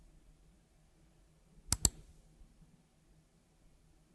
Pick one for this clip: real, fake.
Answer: real